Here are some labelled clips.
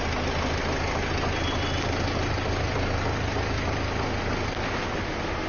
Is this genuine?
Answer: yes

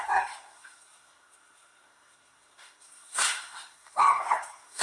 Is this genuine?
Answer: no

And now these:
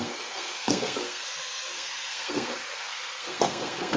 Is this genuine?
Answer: no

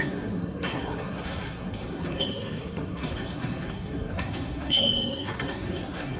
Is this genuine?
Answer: no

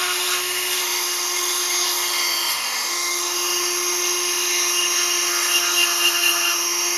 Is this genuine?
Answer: no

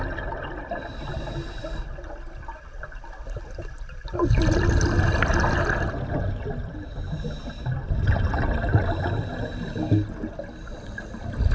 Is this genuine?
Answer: yes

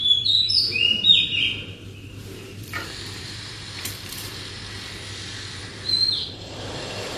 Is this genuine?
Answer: no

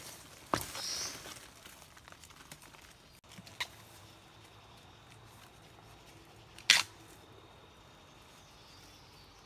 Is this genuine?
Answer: yes